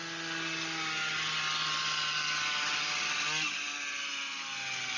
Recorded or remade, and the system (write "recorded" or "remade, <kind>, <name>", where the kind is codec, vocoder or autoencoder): recorded